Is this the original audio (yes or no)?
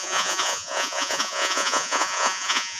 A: no